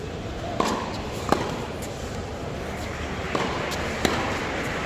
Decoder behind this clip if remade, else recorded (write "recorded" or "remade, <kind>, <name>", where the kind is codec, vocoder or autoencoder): recorded